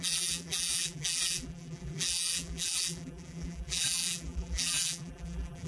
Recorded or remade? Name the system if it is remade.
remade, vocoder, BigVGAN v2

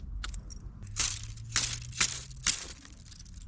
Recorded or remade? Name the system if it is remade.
recorded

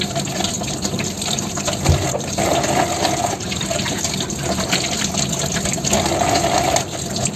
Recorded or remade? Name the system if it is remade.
recorded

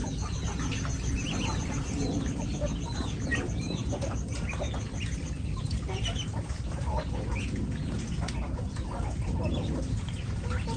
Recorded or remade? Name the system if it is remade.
recorded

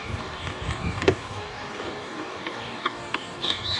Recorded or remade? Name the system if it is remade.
remade, codec, DAC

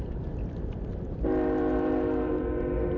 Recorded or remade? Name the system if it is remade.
recorded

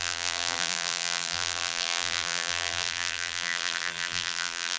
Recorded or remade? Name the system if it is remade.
remade, vocoder, BigVGAN v2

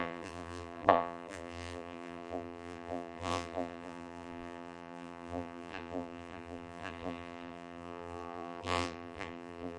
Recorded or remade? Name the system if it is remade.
remade, vocoder, BigVGAN v2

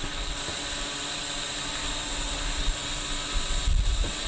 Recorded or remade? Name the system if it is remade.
recorded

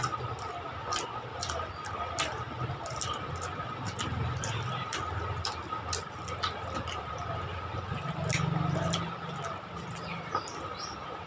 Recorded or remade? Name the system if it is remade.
recorded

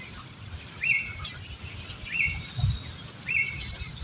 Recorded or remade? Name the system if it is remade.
recorded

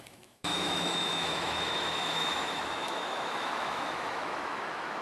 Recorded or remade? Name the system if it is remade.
remade, autoencoder, DAC-VAE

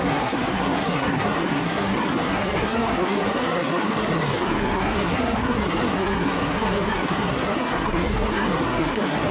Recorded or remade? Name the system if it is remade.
remade, codec, SNAC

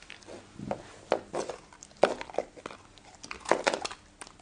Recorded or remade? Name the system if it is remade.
recorded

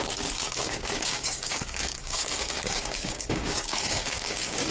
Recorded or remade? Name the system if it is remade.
remade, codec, DAC